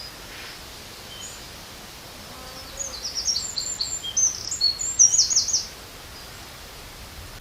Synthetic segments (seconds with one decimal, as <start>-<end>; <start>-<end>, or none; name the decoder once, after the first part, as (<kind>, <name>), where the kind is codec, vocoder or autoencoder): none

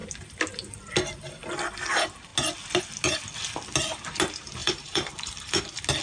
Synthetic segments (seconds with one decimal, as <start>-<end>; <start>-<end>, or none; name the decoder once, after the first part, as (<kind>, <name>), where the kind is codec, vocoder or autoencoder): 4.6-5.6 (vocoder, BigVGAN v2)

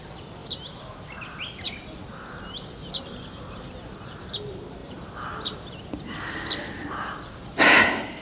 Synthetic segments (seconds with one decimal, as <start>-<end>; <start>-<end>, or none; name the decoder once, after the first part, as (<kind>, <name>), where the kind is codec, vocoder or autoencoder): 4.8-7.4 (vocoder, BigVGAN v2)

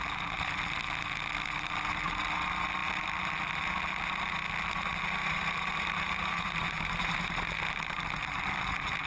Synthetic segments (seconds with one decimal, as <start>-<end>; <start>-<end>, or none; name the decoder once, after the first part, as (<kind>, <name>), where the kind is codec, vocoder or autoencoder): 5.2-7.8 (vocoder, BigVGAN v2)

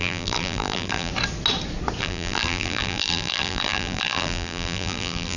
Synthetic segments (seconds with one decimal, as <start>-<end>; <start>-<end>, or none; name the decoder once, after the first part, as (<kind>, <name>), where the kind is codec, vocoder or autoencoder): 0.0-1.1 (vocoder, BigVGAN v2); 2.0-5.4

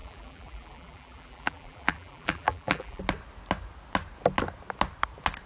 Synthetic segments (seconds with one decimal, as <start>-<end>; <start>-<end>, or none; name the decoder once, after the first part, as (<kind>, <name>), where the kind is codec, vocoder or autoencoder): 0.0-3.0 (vocoder, BigVGAN v2)

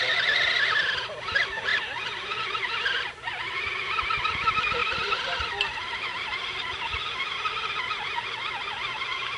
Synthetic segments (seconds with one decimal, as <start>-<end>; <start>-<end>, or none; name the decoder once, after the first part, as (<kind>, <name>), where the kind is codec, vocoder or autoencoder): 4.8-5.5 (vocoder, BigVGAN v2)

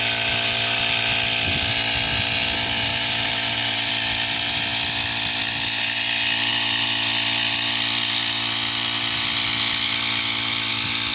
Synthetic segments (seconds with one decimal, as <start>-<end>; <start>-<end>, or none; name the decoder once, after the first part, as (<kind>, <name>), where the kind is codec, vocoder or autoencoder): 2.9-3.9 (vocoder, BigVGAN v2)